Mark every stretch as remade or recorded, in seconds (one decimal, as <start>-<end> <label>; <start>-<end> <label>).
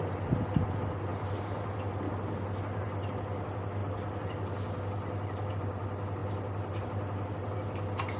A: 0.0-8.2 recorded